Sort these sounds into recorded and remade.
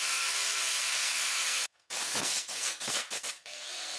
remade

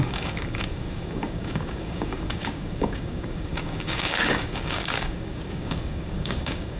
remade